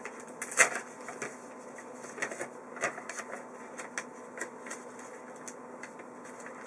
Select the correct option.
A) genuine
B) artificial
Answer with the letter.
A